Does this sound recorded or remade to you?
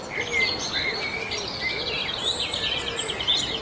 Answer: recorded